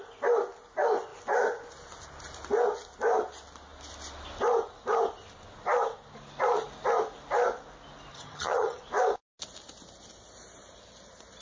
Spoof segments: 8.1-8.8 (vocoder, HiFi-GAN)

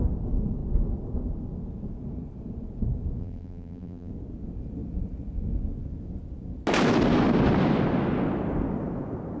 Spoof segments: 3.2-4.1 (vocoder, BigVGAN v2)